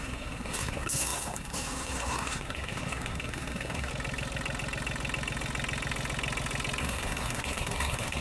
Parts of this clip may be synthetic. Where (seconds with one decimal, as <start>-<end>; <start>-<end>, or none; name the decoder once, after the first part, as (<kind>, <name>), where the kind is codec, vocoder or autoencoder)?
0.0-3.9 (codec, SNAC); 6.8-8.2